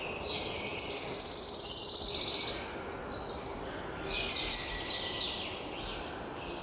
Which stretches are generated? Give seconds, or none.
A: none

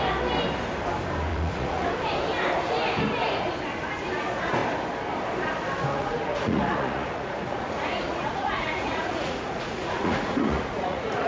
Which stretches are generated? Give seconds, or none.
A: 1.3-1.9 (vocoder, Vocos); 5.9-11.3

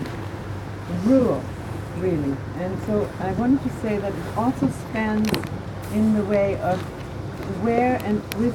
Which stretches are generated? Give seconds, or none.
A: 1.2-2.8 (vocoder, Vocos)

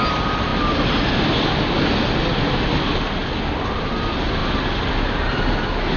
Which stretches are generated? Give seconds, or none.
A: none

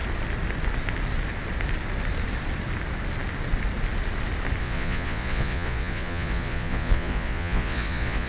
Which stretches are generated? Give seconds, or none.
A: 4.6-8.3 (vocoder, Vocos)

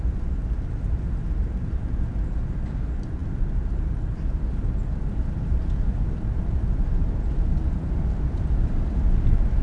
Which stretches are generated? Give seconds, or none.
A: none

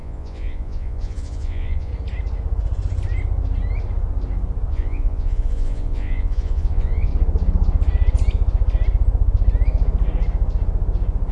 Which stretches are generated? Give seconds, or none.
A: 0.0-1.9 (vocoder, Vocos); 4.7-7.1

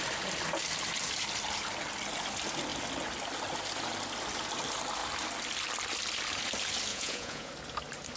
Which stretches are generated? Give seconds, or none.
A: 6.9-7.5 (vocoder, Vocos)